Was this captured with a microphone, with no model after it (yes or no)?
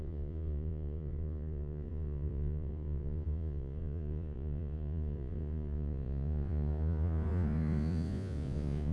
no